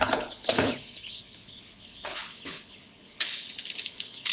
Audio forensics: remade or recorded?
remade